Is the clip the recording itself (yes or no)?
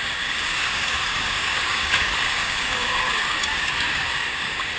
no